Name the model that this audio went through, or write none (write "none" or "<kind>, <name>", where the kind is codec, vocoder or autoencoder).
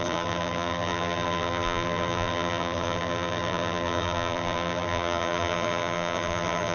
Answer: vocoder, BigVGAN v2